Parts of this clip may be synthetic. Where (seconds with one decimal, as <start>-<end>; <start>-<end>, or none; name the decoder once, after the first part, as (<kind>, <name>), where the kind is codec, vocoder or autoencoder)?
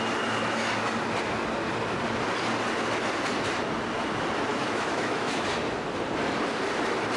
4.5-5.5 (autoencoder, DAC-VAE)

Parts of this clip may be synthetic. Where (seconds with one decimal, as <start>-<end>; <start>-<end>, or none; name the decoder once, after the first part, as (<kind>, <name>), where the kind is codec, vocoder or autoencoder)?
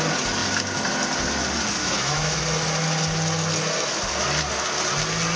1.8-2.4 (autoencoder, DAC-VAE)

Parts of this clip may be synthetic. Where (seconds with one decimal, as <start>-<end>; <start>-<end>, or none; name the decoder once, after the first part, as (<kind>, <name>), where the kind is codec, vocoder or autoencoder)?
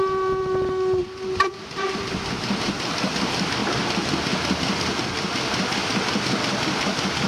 none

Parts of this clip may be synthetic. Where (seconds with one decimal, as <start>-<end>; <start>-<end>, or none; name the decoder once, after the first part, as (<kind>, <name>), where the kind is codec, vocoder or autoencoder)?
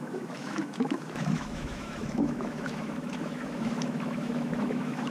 0.0-5.1 (autoencoder, DAC-VAE)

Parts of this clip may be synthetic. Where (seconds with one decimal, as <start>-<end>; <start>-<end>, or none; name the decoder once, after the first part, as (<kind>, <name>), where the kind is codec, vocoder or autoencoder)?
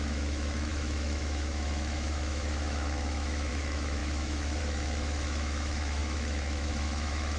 0.0-7.4 (autoencoder, DAC-VAE)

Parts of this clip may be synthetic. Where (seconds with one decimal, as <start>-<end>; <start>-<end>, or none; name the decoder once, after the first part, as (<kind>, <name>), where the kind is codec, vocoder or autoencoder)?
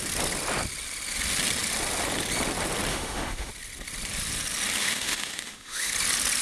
2.9-3.5 (autoencoder, DAC-VAE); 4.8-5.9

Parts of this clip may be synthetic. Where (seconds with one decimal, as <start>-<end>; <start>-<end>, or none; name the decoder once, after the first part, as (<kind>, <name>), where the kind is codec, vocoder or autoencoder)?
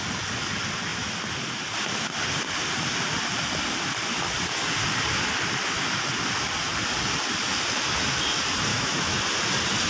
8.7-9.2 (autoencoder, DAC-VAE)